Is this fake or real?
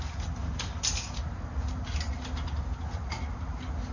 real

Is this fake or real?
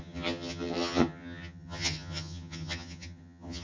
fake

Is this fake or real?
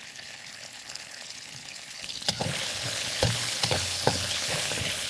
fake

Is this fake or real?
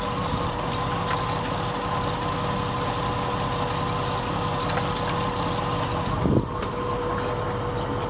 real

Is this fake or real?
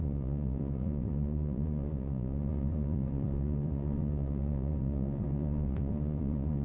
fake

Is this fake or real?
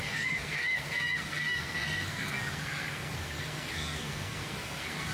fake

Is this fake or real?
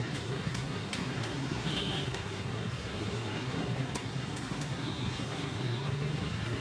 fake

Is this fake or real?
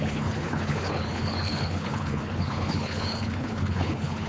fake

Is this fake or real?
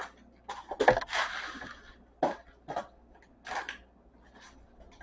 real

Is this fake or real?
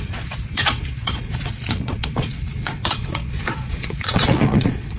fake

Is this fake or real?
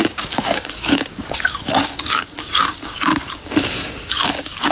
fake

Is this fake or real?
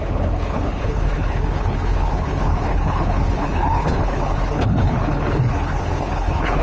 fake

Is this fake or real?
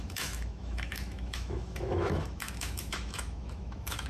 fake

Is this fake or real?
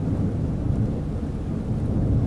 real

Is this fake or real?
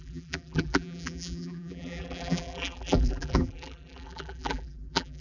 fake